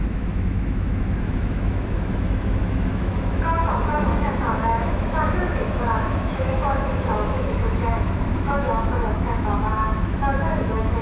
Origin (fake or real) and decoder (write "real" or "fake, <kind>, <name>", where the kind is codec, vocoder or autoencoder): fake, autoencoder, DAC-VAE